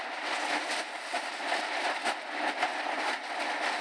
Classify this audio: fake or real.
real